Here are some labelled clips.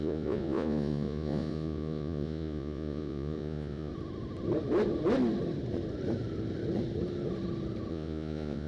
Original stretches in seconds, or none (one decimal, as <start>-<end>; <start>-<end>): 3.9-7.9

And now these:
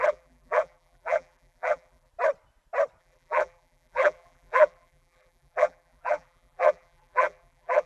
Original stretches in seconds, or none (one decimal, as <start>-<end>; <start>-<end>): 2.1-3.0

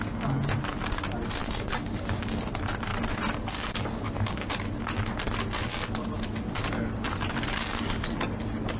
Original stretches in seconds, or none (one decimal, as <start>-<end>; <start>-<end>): 0.0-8.8

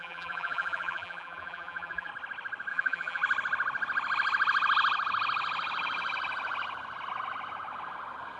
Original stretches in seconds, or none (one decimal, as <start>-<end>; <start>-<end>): 2.1-2.7; 3.2-8.4